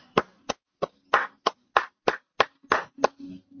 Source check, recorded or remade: recorded